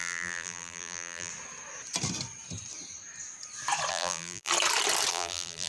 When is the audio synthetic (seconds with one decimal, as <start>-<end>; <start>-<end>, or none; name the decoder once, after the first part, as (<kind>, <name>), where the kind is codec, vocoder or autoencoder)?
0.0-1.3 (vocoder, BigVGAN v2); 3.9-4.5; 5.1-5.7